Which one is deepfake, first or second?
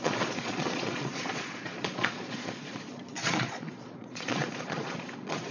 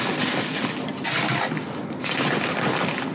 first